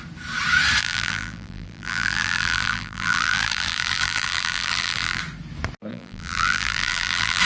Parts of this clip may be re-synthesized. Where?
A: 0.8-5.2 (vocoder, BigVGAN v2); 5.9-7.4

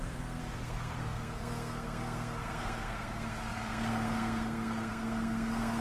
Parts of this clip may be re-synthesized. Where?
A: 0.0-5.8 (codec, SNAC)

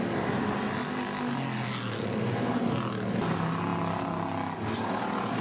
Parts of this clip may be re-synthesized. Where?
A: none

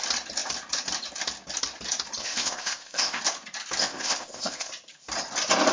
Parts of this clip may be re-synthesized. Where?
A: 2.2-3.2 (codec, ZipCodec); 3.8-4.7